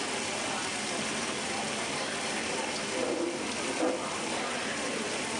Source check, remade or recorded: recorded